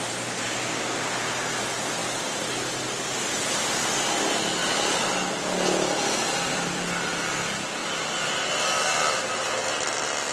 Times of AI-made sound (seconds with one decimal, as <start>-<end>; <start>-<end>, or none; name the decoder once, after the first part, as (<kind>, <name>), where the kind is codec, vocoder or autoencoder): none